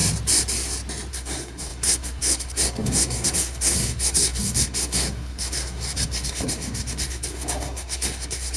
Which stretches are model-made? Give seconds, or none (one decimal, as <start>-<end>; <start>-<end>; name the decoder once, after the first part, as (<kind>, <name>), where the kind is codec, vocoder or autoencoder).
1.1-8.6 (codec, SNAC)